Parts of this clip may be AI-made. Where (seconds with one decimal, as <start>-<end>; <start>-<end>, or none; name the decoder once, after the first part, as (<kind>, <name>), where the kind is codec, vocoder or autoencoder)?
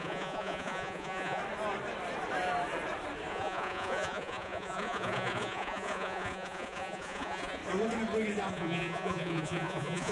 0.0-1.4 (vocoder, Vocos); 3.3-7.6; 8.5-10.1